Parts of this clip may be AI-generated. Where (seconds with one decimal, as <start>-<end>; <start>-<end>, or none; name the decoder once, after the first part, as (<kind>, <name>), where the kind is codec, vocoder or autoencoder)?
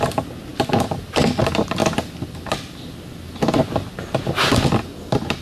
none